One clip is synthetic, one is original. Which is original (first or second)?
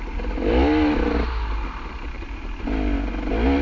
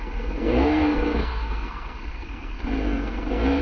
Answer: first